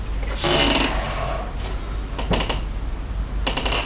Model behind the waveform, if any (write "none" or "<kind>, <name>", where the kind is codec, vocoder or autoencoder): none